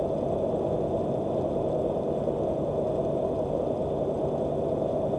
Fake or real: real